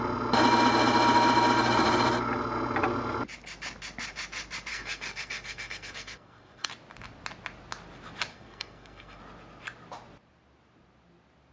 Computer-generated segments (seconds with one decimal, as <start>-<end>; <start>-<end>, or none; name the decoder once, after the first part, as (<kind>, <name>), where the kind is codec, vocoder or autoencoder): 4.7-6.7 (codec, SNAC); 8.3-9.2